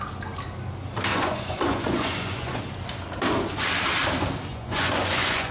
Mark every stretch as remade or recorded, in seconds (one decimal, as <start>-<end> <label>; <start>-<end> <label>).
0.0-1.1 recorded; 1.1-2.6 remade; 2.6-4.5 recorded; 4.5-5.5 remade